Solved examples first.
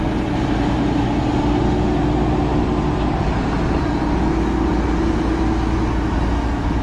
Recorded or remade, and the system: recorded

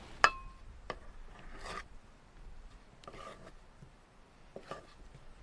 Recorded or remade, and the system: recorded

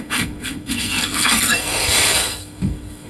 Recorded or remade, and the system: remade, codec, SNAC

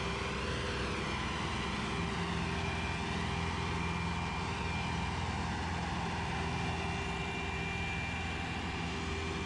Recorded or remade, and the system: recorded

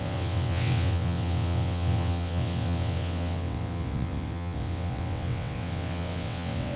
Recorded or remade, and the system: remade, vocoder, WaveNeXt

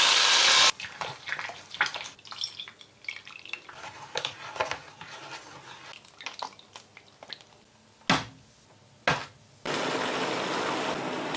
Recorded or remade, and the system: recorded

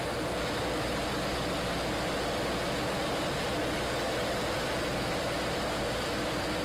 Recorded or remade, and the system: recorded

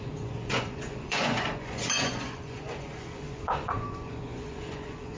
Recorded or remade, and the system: remade, vocoder, Vocos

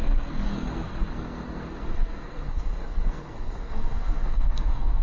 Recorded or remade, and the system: remade, codec, SNAC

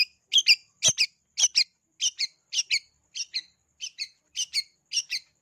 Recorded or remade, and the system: recorded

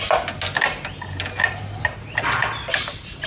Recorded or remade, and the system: recorded